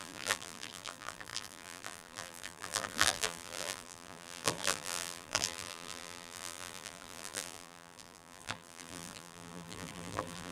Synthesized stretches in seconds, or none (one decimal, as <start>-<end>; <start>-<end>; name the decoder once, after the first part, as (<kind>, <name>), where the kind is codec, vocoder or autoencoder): 0.0-10.5 (vocoder, BigVGAN v2)